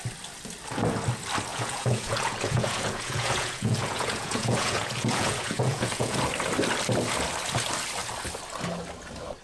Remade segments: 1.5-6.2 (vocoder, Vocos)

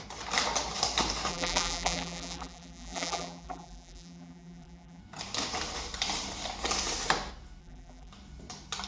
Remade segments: 1.3-5.0 (vocoder, BigVGAN v2); 7.6-8.1

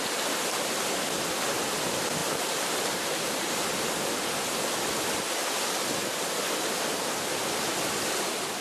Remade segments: 2.2-3.6 (vocoder, BigVGAN v2)

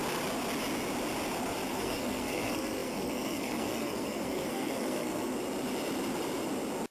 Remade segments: 1.7-5.3 (codec, SNAC)

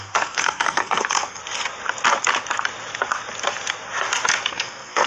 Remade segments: 0.0-1.4 (codec, SNAC); 4.5-5.1

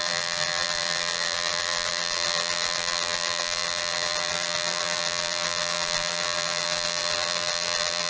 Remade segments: 0.0-8.1 (vocoder, BigVGAN v2)